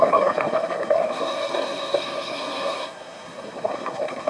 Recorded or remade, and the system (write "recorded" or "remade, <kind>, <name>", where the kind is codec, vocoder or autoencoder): remade, codec, SNAC